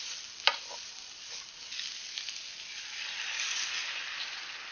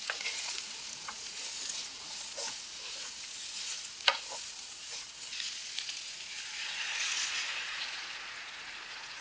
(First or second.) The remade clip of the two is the second